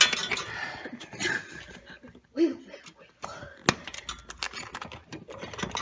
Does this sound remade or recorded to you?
recorded